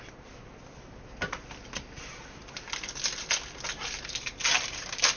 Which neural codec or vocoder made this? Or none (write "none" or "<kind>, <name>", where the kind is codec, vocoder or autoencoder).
none